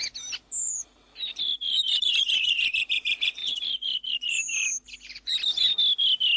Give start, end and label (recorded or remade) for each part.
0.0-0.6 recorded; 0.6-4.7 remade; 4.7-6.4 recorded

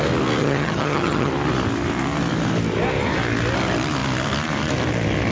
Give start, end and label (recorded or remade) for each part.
0.0-0.4 recorded; 0.4-1.3 remade; 1.3-5.3 recorded

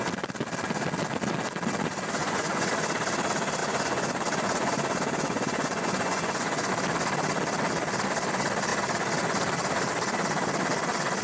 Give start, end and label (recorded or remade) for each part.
0.0-2.2 recorded; 2.2-2.7 remade; 2.7-3.6 recorded; 3.6-6.7 remade; 6.7-11.2 recorded

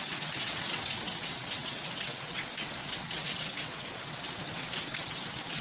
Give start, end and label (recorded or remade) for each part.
0.0-5.6 remade

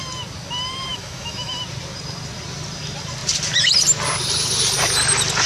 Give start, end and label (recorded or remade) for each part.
0.0-0.9 recorded; 0.9-1.6 remade; 1.6-5.5 recorded

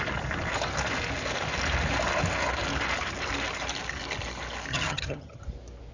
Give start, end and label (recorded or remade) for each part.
0.0-4.7 recorded; 4.7-5.4 remade; 5.4-5.9 recorded

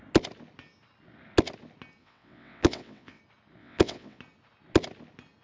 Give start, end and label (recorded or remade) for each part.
0.0-2.0 recorded; 2.0-3.2 remade; 3.2-3.6 recorded; 3.6-4.2 remade; 4.2-5.4 recorded

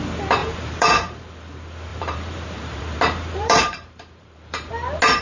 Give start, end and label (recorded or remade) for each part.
0.0-0.4 recorded; 0.4-1.2 remade; 1.2-1.9 recorded; 1.9-4.7 remade; 4.7-5.2 recorded